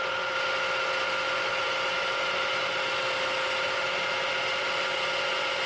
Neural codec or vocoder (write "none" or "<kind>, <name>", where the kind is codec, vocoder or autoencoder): none